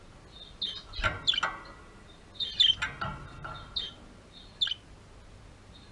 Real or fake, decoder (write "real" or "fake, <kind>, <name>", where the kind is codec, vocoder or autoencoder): real